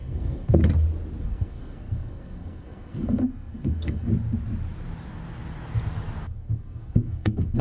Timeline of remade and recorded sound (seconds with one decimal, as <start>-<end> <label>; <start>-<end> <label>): 0.0-0.6 remade; 0.6-1.2 recorded; 1.2-4.1 remade; 4.1-6.2 recorded; 6.2-7.6 remade